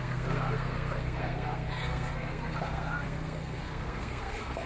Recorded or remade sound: remade